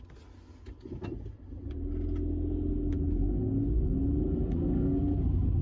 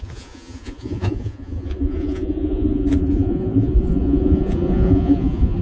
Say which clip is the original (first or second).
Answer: first